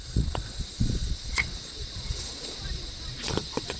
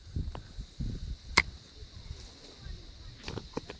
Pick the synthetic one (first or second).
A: first